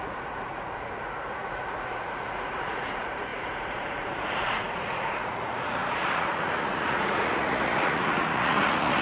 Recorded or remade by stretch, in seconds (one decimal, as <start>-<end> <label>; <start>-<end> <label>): 0.0-9.0 remade